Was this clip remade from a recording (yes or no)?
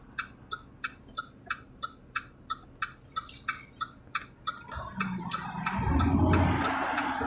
no